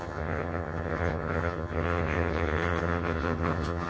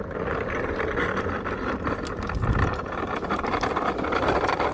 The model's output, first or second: first